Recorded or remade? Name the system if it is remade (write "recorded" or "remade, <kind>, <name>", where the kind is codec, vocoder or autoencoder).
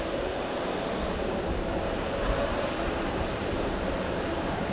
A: remade, vocoder, BigVGAN v2